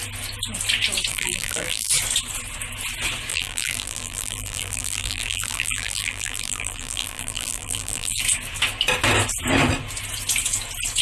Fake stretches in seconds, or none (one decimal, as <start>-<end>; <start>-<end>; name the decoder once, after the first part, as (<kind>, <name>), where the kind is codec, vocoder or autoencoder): 1.1-1.9 (vocoder, BigVGAN v2); 3.3-8.2